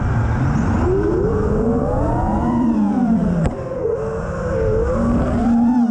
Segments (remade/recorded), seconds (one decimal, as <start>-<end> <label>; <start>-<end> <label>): 0.0-1.3 recorded; 1.3-3.9 remade; 3.9-5.9 recorded